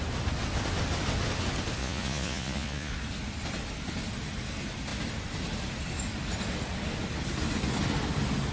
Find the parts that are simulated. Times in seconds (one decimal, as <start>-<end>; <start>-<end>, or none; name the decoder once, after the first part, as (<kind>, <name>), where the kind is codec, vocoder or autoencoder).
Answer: 1.8-2.9 (vocoder, Vocos)